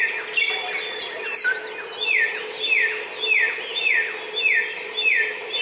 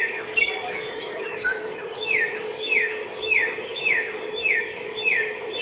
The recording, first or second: first